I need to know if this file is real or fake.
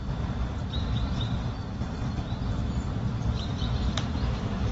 fake